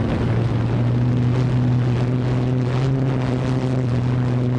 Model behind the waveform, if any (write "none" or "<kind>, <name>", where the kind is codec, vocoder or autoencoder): none